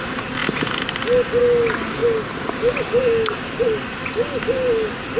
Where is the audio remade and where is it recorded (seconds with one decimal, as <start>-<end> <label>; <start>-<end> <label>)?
0.0-5.2 recorded

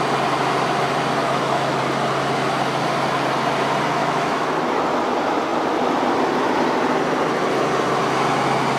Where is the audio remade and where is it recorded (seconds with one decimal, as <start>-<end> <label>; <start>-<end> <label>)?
0.0-1.2 recorded; 1.2-1.8 remade; 1.8-4.0 recorded; 4.0-4.5 remade; 4.5-8.8 recorded

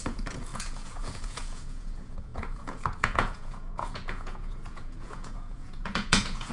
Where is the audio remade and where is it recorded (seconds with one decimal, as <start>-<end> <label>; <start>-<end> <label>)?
0.0-6.5 remade